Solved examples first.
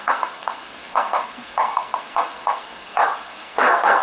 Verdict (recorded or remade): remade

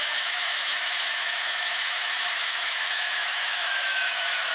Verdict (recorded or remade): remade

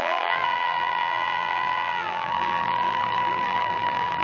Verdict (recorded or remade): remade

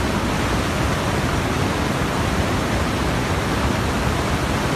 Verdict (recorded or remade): recorded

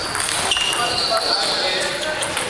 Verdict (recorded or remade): recorded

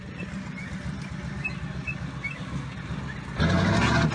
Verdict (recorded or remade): recorded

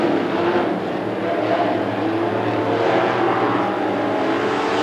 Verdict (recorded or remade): recorded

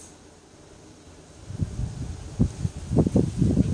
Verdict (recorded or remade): recorded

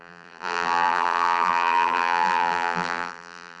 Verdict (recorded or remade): remade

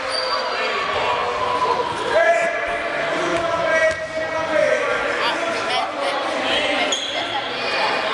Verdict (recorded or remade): recorded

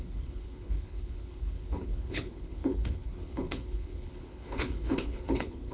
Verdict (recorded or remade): remade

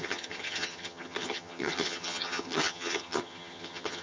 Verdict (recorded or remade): remade